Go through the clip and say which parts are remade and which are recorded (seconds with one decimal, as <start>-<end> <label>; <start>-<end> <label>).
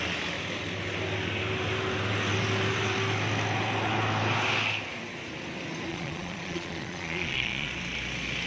0.0-5.9 recorded; 5.9-7.7 remade; 7.7-8.5 recorded